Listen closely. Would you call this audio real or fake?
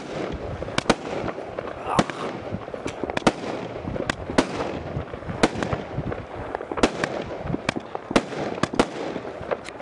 real